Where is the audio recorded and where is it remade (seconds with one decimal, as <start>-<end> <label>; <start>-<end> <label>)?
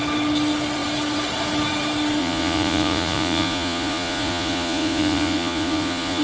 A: 0.0-2.2 recorded; 2.2-6.2 remade